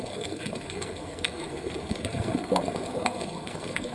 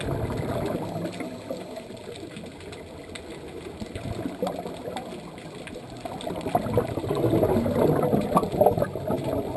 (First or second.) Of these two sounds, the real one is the second